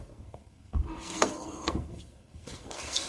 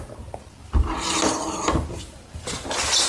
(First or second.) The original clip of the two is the second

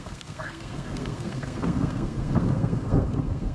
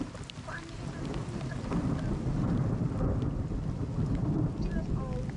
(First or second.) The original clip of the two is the second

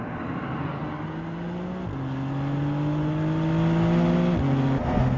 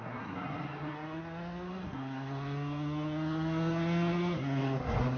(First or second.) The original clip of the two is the first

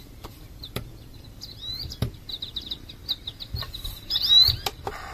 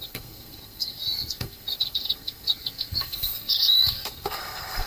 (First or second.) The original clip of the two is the first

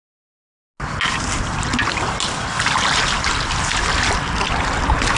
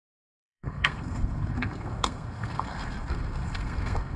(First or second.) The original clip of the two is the first